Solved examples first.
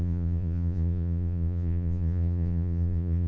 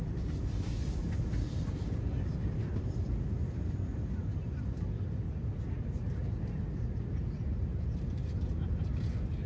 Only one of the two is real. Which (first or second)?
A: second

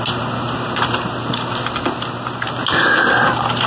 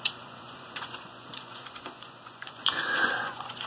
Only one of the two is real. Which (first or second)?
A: first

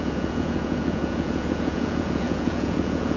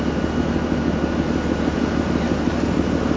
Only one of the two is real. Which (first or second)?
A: second